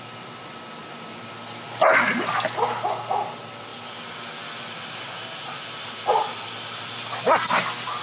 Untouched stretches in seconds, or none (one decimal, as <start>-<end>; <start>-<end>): 0.0-8.0